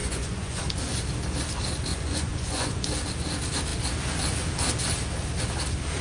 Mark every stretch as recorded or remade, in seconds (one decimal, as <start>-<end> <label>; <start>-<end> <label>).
0.0-0.6 remade; 0.6-1.9 recorded; 1.9-2.9 remade; 2.9-6.0 recorded